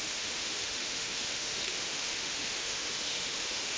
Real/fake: fake